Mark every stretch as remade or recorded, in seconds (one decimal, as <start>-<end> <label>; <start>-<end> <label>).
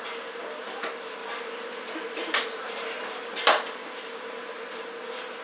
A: 0.0-5.4 recorded